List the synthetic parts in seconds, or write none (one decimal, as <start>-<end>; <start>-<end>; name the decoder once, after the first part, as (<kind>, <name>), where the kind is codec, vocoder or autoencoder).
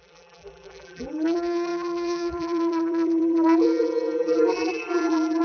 0.0-5.4 (vocoder, BigVGAN v2)